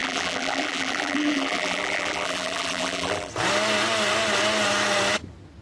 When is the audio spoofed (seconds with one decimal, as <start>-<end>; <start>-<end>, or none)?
0.0-3.3